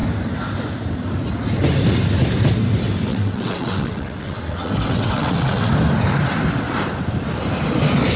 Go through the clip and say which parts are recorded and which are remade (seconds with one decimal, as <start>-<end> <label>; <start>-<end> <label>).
0.0-3.1 recorded; 3.1-5.7 remade; 5.7-8.2 recorded